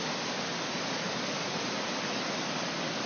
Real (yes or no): yes